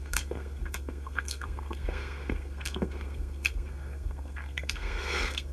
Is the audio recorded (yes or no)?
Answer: no